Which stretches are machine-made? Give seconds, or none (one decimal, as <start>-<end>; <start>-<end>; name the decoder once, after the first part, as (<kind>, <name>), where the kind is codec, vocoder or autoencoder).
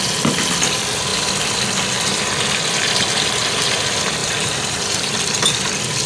4.2-5.1 (vocoder, BigVGAN v2)